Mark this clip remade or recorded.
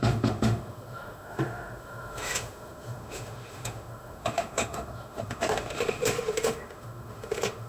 remade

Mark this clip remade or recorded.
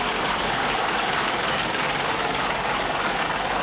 remade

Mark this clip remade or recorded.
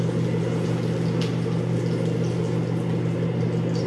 recorded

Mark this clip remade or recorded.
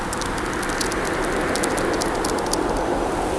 recorded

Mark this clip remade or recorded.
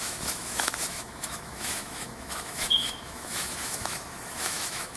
remade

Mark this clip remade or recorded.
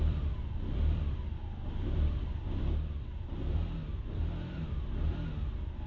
remade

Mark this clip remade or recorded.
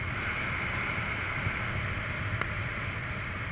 recorded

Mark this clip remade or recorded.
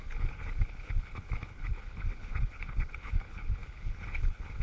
remade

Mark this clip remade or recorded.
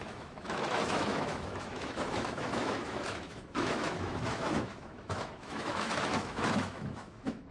remade